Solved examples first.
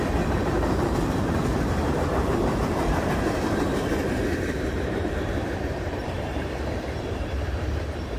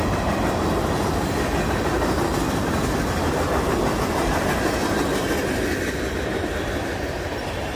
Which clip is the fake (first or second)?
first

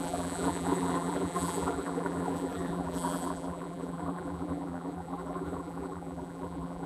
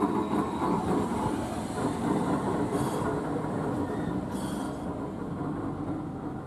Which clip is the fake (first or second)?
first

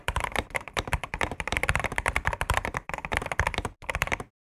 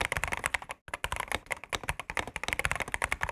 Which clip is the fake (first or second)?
first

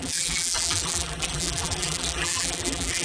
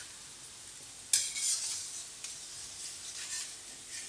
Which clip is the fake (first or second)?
first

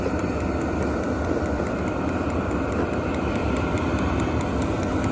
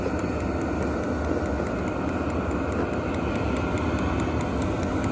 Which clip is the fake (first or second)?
first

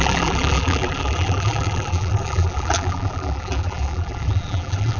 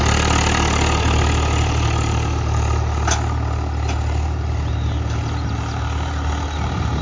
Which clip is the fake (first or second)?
first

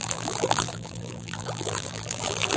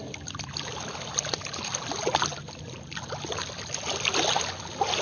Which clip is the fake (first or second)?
first